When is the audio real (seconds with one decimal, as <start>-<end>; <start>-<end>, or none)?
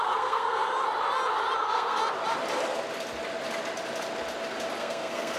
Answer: 0.6-1.6; 2.0-4.8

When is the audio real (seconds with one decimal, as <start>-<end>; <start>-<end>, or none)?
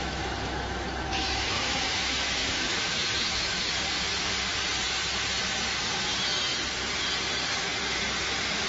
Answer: 2.0-2.4; 3.7-8.7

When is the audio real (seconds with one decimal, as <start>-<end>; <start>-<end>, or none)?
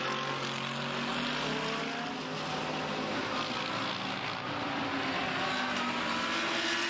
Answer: 0.0-6.9